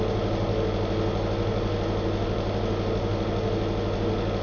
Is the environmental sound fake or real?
real